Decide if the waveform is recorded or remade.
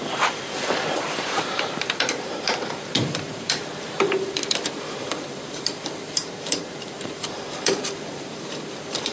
remade